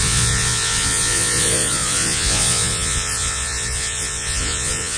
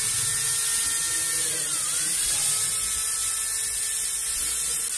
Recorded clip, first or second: second